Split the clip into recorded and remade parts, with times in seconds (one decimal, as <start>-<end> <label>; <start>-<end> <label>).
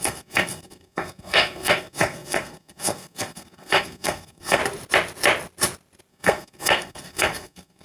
0.0-4.6 remade; 4.6-6.1 recorded; 6.1-7.8 remade